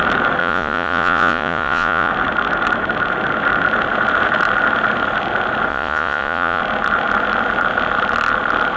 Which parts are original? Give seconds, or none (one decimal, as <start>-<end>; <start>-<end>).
0.0-0.4; 2.1-5.7; 6.6-8.8